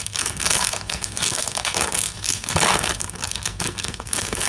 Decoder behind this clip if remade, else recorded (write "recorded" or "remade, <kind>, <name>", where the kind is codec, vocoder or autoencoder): remade, codec, SNAC